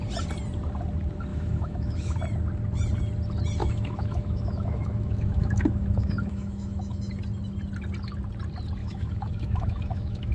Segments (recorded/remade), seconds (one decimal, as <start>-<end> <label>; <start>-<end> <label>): 0.0-1.3 recorded; 1.3-2.2 remade; 2.2-3.6 recorded; 3.6-7.1 remade; 7.1-8.8 recorded; 8.8-10.3 remade